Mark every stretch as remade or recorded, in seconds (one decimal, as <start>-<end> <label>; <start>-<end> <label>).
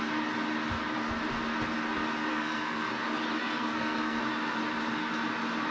0.0-2.3 recorded; 2.3-2.9 remade; 2.9-3.4 recorded; 3.4-4.2 remade; 4.2-5.7 recorded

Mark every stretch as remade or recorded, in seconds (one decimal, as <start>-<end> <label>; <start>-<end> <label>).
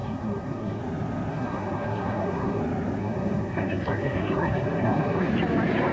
0.0-0.8 remade; 0.8-1.3 recorded; 1.3-2.6 remade; 2.6-3.0 recorded; 3.0-5.3 remade; 5.3-5.9 recorded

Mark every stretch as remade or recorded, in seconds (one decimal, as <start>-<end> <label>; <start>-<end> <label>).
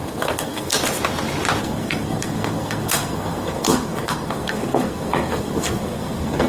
0.0-0.7 remade; 0.7-1.6 recorded; 1.6-6.5 remade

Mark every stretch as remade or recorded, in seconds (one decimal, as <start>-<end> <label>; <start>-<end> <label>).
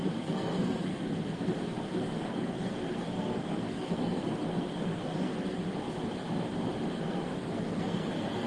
0.0-5.6 remade; 5.6-6.9 recorded; 6.9-8.5 remade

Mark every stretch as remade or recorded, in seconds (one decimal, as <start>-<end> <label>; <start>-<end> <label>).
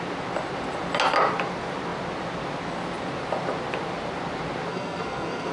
0.0-4.7 recorded; 4.7-5.5 remade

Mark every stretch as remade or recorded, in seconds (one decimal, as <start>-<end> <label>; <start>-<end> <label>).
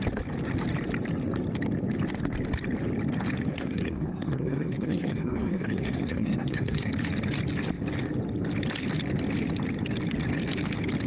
0.0-3.5 recorded; 3.5-6.9 remade; 6.9-11.1 recorded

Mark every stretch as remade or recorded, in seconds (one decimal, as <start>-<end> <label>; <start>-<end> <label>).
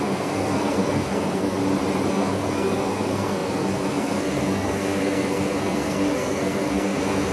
0.0-1.6 remade; 1.6-2.1 recorded; 2.1-7.3 remade